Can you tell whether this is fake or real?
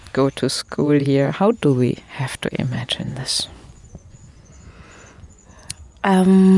fake